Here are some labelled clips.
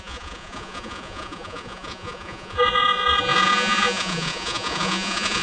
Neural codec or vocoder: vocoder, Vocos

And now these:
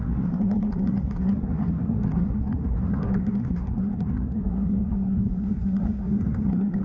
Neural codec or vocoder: codec, SNAC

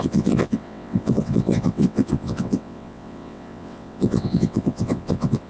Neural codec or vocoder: vocoder, WaveNeXt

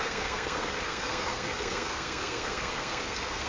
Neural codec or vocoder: codec, SNAC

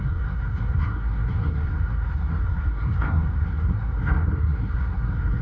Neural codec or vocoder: codec, SNAC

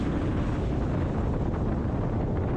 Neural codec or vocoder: none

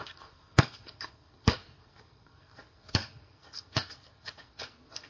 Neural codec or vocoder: codec, SNAC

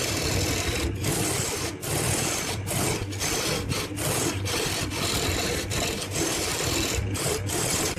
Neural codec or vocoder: none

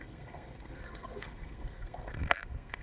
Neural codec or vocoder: codec, SNAC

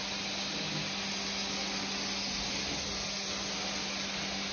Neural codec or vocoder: none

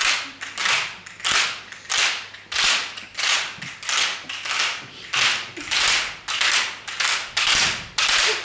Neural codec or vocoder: none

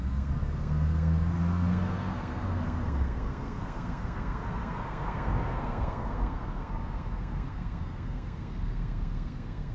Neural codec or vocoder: codec, SNAC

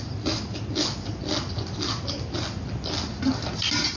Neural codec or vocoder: none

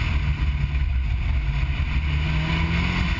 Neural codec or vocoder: none